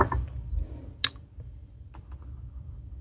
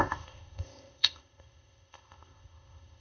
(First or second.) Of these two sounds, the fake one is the second